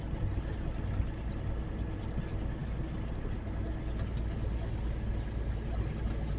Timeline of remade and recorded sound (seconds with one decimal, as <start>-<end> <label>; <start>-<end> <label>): 0.0-6.4 recorded